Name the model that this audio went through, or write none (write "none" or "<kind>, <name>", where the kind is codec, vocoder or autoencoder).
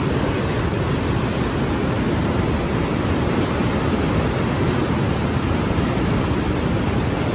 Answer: none